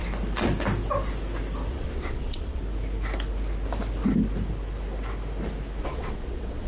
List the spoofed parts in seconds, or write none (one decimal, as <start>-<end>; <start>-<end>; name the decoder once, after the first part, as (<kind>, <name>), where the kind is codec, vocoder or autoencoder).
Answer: 1.7-2.6 (vocoder, WaveNeXt); 5.8-6.7